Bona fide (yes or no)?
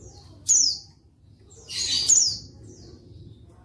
yes